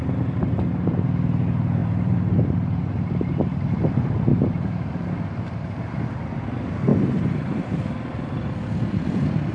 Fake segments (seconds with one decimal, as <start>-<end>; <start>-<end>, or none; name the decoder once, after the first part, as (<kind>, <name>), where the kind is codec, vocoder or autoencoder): 1.8-2.8 (vocoder, BigVGAN v2); 4.3-5.9; 6.9-7.8